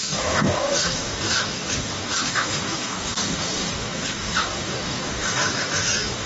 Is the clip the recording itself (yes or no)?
no